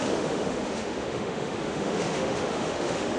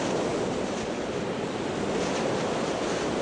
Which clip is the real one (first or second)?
second